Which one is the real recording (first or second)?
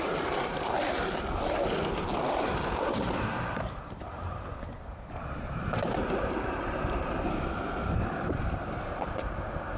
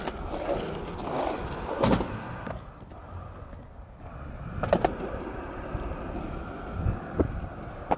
second